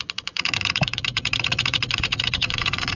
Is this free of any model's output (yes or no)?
no